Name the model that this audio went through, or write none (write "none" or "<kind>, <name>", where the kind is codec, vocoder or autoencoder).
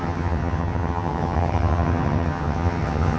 vocoder, HiFi-GAN